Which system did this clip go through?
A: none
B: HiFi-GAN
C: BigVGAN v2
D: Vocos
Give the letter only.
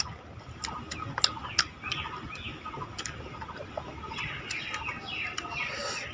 A